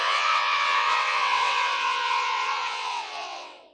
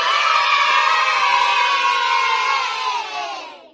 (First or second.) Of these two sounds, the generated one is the first